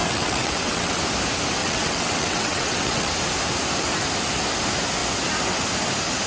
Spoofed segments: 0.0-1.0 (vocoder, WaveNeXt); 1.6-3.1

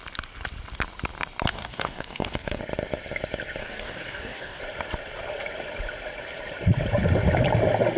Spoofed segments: 1.5-2.6 (codec, DAC); 3.6-4.6

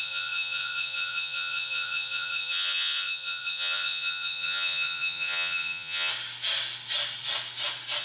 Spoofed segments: 0.0-6.1 (vocoder, Vocos)

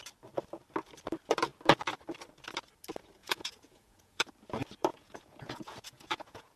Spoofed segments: 3.2-4.3 (vocoder, Vocos); 4.9-6.6

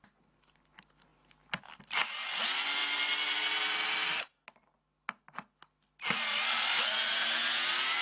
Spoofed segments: none

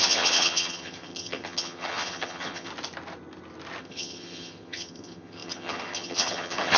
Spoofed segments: 0.0-2.7 (vocoder, HiFi-GAN); 3.8-6.8